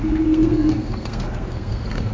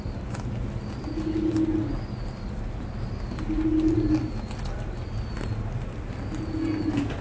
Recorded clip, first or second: second